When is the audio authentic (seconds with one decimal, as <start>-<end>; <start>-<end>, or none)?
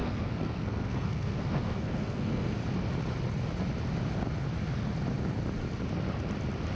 2.6-6.8